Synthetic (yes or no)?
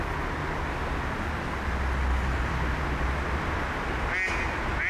no